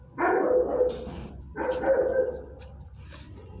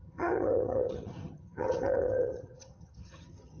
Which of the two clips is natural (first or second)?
first